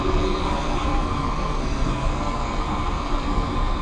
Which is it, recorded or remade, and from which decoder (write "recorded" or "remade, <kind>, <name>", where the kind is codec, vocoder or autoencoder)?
remade, codec, SNAC